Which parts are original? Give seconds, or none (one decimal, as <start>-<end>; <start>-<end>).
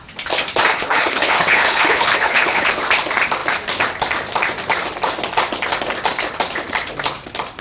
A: 0.0-0.7; 2.8-7.6